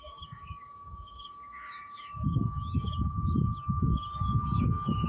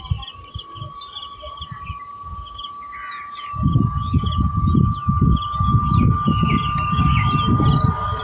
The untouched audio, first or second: second